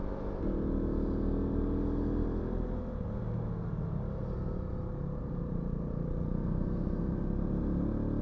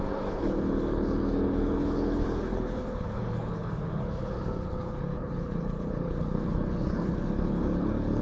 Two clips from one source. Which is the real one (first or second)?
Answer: first